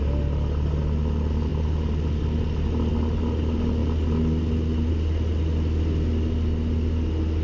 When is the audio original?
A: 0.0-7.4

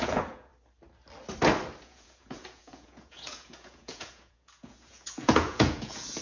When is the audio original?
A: 0.5-1.8

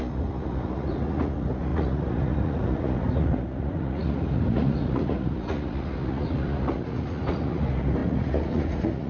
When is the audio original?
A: none

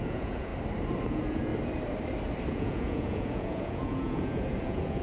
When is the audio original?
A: 0.5-1.1; 1.5-2.5